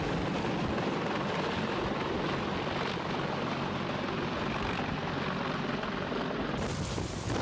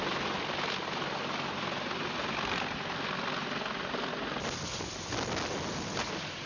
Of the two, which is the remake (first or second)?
first